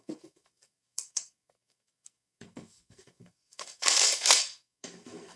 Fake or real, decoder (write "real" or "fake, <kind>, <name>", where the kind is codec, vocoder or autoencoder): fake, codec, SNAC